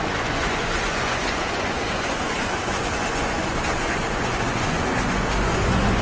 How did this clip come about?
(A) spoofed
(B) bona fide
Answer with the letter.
A